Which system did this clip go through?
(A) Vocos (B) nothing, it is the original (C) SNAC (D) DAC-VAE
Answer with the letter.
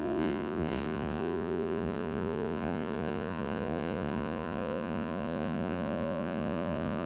A